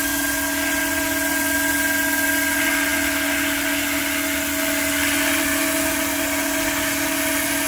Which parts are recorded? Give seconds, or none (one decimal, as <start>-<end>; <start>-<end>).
0.0-7.7